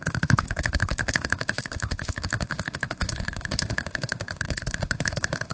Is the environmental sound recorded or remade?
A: remade